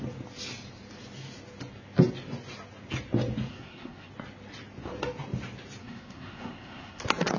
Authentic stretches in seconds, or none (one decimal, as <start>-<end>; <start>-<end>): 0.0-3.5; 4.1-5.8; 7.0-7.4